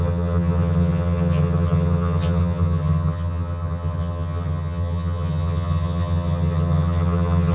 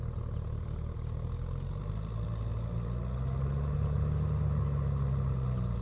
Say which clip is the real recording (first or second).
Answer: second